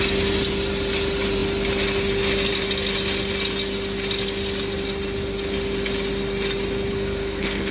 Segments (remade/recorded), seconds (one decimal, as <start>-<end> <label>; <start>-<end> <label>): 0.0-6.9 recorded; 6.9-7.7 remade

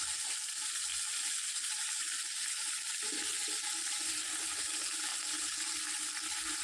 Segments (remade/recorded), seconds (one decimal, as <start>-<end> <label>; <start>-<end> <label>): 0.0-6.6 recorded

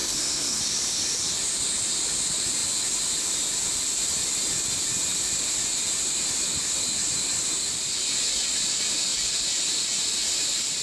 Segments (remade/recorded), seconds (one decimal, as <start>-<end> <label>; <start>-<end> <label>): 0.0-0.6 remade; 0.6-10.8 recorded

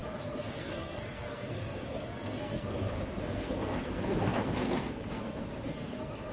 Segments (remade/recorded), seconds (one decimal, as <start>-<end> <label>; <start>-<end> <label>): 0.0-6.3 remade

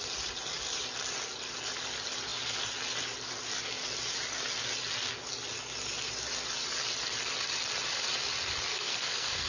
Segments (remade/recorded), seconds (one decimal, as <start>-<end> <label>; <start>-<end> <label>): 0.0-8.7 recorded; 8.7-9.5 remade